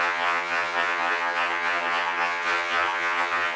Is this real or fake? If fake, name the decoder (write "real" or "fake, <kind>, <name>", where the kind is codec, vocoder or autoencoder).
fake, vocoder, HiFi-GAN